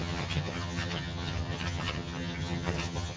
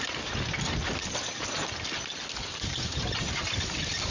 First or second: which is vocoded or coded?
first